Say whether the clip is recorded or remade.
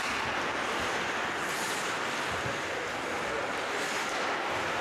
recorded